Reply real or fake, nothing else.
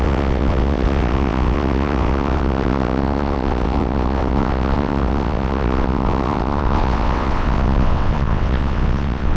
fake